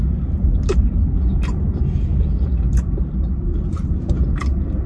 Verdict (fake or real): real